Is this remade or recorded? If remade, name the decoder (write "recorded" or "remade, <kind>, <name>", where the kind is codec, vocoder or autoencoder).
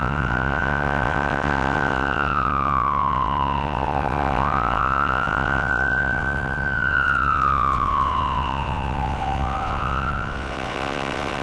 remade, vocoder, WaveNeXt